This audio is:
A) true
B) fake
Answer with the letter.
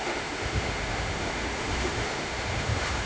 B